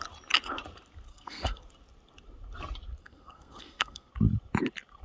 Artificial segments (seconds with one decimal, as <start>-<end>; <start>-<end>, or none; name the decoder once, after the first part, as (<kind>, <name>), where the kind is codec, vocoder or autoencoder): 1.1-1.6 (codec, SNAC); 3.0-4.1